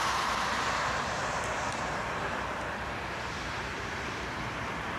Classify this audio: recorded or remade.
remade